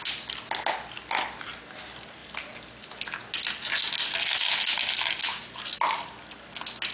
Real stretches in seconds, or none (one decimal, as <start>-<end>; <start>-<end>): 0.0-6.9